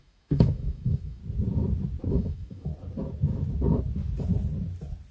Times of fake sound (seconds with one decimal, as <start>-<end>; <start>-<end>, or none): 0.0-1.2; 2.1-2.7